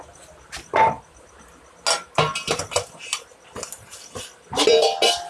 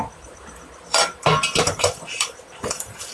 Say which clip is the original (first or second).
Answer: first